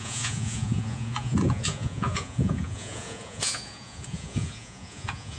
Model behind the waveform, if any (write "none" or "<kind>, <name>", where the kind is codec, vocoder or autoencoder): vocoder, Vocos